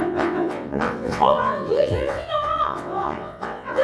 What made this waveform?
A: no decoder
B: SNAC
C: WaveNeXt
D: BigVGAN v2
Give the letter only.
C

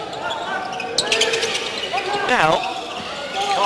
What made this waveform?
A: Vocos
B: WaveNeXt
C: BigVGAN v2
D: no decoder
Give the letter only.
D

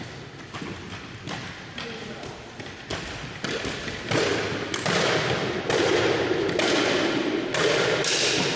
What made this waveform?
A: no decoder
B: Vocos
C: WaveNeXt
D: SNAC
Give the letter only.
A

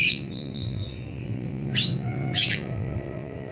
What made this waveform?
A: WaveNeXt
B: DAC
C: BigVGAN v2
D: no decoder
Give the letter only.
A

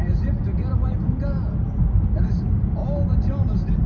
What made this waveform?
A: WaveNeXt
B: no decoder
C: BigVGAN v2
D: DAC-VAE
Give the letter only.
B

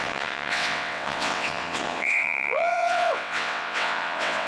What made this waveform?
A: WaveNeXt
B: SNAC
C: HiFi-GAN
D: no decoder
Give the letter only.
A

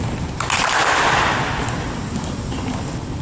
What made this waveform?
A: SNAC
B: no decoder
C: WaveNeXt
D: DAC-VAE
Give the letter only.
B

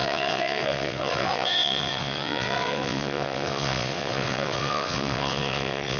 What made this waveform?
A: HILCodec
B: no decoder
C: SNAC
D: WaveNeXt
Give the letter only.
D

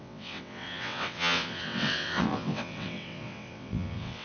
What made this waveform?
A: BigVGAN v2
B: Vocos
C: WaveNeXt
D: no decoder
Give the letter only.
C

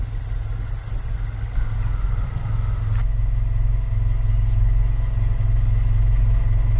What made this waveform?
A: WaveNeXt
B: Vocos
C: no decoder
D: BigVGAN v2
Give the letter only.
C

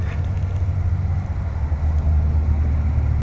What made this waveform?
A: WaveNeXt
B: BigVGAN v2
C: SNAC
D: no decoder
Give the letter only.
D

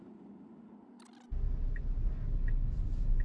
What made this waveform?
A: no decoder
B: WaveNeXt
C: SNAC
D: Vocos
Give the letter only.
A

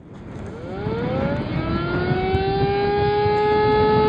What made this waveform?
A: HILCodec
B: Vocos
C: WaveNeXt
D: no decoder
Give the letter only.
D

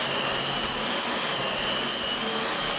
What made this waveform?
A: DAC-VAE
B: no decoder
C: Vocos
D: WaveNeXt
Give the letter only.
B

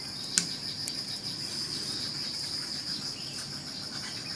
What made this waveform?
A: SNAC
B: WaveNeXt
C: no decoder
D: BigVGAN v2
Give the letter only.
C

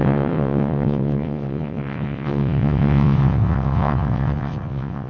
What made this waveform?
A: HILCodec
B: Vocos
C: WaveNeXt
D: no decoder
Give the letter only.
C